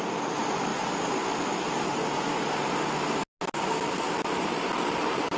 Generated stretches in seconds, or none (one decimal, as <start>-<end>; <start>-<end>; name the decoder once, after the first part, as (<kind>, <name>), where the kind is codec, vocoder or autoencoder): none